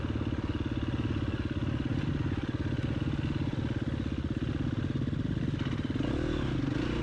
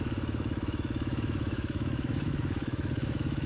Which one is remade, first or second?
second